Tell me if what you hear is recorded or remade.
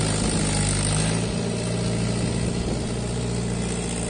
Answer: recorded